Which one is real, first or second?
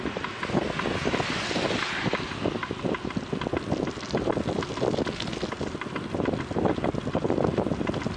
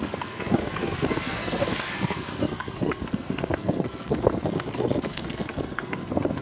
first